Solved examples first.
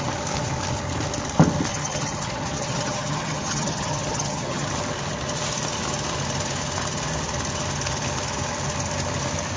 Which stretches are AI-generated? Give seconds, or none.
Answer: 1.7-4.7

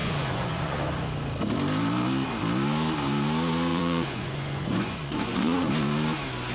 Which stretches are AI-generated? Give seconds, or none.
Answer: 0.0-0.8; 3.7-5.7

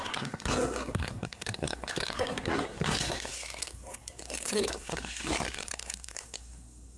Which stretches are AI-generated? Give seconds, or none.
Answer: 0.0-7.0

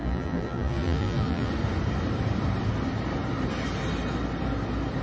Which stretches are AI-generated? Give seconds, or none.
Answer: 0.0-1.5

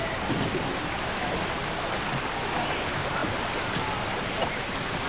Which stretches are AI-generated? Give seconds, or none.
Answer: none